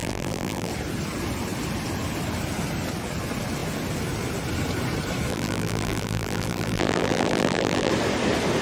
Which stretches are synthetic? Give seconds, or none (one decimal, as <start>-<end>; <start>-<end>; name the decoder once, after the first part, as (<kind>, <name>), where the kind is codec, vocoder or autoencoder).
0.0-0.7 (vocoder, BigVGAN v2); 5.3-7.9